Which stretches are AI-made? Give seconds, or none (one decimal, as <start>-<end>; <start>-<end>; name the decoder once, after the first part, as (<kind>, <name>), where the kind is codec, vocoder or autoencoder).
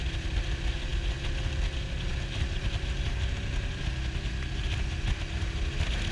none